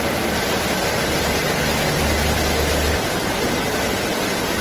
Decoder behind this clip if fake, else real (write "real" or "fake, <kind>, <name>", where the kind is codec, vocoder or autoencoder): real